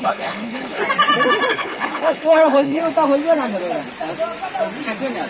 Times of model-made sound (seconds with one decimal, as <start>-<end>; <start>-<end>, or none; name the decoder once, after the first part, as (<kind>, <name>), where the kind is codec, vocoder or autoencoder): 0.0-0.8 (codec, HILCodec); 1.5-2.8